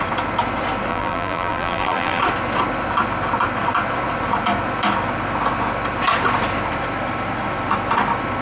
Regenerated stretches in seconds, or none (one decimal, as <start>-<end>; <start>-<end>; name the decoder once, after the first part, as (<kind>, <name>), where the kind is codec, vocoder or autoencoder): 0.9-2.2 (vocoder, BigVGAN v2)